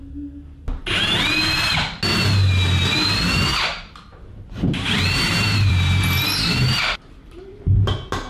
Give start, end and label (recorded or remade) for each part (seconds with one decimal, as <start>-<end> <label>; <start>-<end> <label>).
0.0-4.1 recorded; 4.1-7.5 remade; 7.5-8.3 recorded